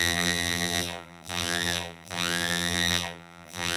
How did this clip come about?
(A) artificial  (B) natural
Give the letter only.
A